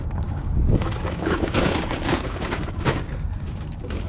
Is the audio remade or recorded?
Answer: remade